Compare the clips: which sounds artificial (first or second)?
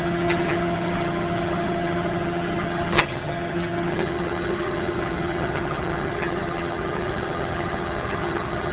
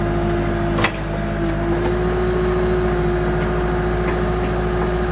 first